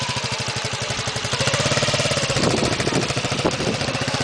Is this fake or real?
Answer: real